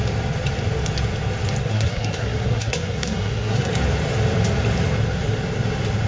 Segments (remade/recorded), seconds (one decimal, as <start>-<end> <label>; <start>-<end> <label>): 0.0-1.6 recorded; 1.6-3.7 remade; 3.7-6.1 recorded